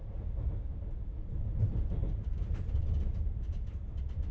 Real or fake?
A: fake